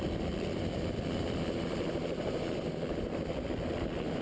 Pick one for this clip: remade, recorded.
recorded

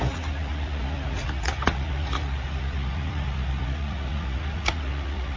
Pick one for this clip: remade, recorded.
remade